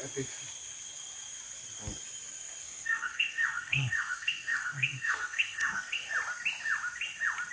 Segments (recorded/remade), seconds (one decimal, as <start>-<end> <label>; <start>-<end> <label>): 0.0-2.6 recorded; 2.6-6.1 remade; 6.1-7.5 recorded